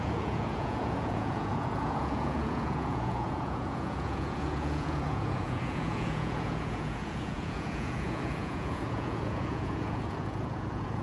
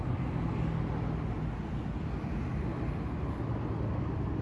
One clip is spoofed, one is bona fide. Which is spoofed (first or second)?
first